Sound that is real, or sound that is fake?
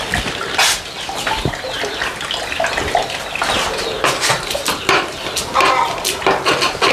real